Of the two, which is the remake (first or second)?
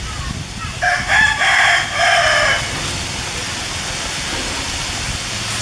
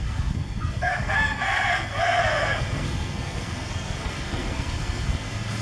second